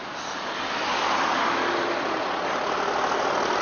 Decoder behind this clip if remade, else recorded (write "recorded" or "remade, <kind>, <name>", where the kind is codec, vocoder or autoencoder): recorded